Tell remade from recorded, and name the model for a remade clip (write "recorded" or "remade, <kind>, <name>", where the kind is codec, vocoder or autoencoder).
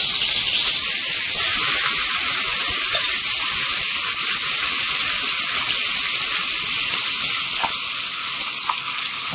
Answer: recorded